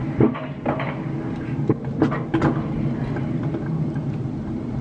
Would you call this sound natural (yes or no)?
yes